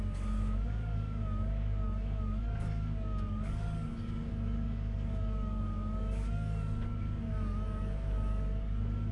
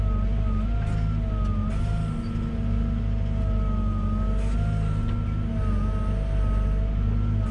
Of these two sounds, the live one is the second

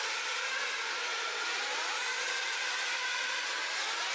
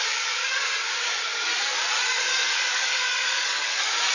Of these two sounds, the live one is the first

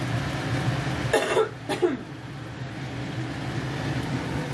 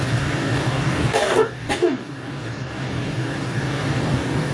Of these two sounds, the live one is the first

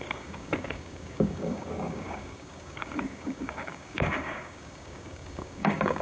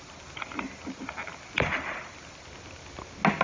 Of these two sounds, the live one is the second